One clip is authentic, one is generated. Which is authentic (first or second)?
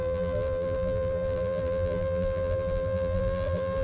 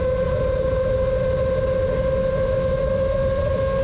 second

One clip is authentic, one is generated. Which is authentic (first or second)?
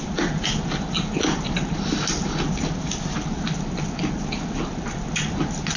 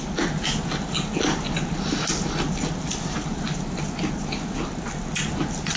second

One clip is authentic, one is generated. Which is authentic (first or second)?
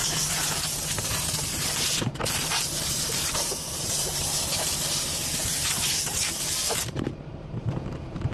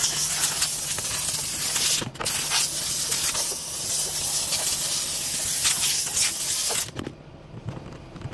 second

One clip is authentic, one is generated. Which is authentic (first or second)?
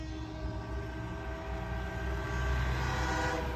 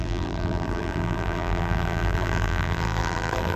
first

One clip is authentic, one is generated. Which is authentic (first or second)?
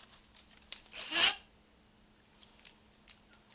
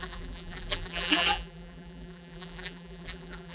first